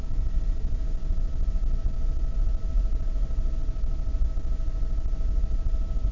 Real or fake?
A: real